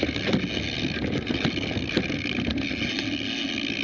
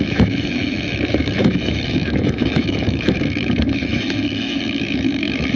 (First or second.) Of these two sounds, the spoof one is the second